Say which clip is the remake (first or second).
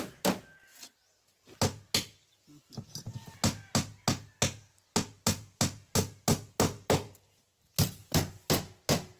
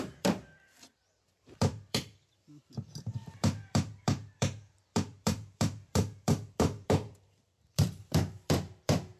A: second